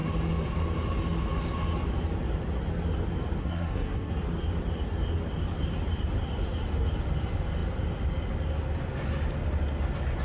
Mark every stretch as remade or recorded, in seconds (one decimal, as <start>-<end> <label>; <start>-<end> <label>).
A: 0.0-3.4 recorded; 3.4-4.1 remade; 4.1-10.2 recorded

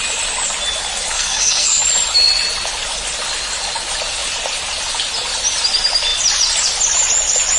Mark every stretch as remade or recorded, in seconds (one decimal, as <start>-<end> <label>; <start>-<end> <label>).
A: 0.0-1.1 recorded; 1.1-1.8 remade; 1.8-7.6 recorded

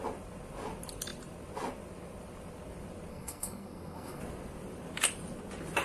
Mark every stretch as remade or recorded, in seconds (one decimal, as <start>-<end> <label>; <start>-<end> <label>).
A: 0.0-3.1 recorded; 3.1-4.2 remade; 4.2-5.8 recorded

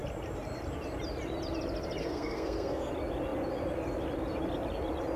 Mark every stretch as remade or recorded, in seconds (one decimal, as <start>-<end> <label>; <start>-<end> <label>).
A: 0.0-2.0 recorded; 2.0-2.9 remade; 2.9-5.2 recorded

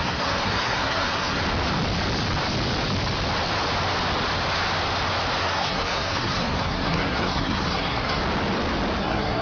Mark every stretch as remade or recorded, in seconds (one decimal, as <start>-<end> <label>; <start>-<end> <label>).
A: 0.0-1.4 remade; 1.4-5.4 recorded; 5.4-8.2 remade; 8.2-9.0 recorded; 9.0-9.4 remade

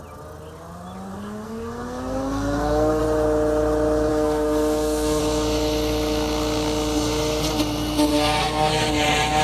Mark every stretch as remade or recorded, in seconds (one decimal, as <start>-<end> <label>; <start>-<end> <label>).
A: 0.0-1.1 recorded; 1.1-3.0 remade; 3.0-4.1 recorded; 4.1-5.2 remade; 5.2-8.1 recorded; 8.1-8.9 remade; 8.9-9.4 recorded

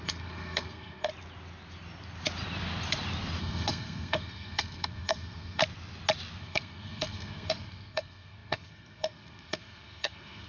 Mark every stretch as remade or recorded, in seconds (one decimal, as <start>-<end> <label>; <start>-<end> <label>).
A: 0.0-1.1 remade; 1.1-3.4 recorded; 3.4-5.6 remade; 5.6-6.4 recorded; 6.4-10.5 remade

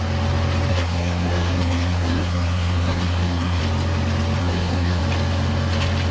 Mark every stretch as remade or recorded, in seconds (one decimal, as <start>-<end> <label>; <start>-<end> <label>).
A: 0.0-0.7 recorded; 0.7-3.6 remade; 3.6-4.4 recorded; 4.4-5.0 remade; 5.0-6.1 recorded